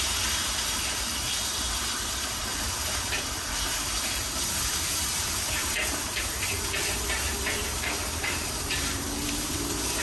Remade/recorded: remade